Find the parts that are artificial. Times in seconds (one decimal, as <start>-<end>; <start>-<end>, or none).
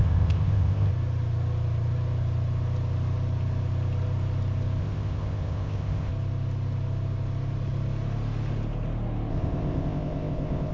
0.0-0.9; 4.8-6.1; 9.3-10.7